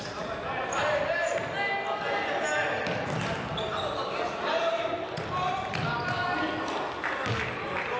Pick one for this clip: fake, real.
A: real